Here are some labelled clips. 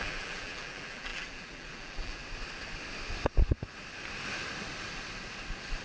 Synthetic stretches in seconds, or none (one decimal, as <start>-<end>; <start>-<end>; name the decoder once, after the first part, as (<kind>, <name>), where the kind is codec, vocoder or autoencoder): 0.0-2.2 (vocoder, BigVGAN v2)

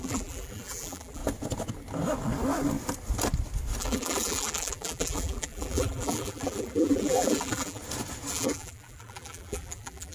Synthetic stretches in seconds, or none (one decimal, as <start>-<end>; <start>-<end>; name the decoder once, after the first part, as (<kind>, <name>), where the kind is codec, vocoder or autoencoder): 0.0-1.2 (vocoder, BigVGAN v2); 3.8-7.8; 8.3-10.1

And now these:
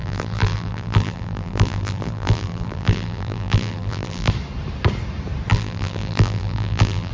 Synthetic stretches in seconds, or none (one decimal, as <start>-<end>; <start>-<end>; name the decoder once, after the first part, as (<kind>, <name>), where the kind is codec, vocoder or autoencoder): 0.0-4.3 (vocoder, BigVGAN v2); 5.5-7.1